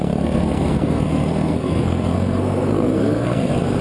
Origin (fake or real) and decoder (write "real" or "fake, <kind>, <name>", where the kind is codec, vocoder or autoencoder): fake, codec, SNAC